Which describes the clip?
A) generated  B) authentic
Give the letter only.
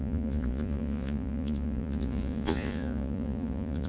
A